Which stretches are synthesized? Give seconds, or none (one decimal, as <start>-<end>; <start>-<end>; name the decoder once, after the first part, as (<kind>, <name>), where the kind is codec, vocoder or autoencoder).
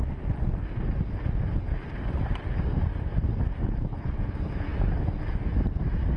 none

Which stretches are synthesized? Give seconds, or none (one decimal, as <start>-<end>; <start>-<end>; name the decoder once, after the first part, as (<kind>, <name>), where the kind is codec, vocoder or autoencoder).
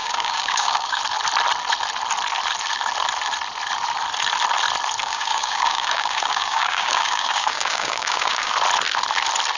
0.0-1.0 (codec, DAC); 5.0-8.5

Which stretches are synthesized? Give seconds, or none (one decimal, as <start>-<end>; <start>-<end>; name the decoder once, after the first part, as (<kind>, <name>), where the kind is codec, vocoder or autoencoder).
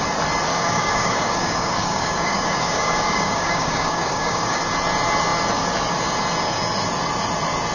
0.5-4.6 (codec, DAC)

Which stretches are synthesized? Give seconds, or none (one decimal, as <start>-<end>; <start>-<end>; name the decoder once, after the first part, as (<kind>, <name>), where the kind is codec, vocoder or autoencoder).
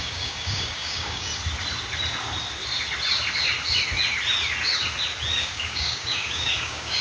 0.0-1.3 (codec, DAC); 5.4-7.0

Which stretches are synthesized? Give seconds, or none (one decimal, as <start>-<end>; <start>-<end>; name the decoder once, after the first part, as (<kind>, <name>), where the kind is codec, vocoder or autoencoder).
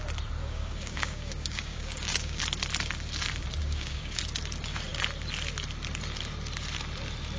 0.4-2.4 (codec, DAC); 3.6-4.2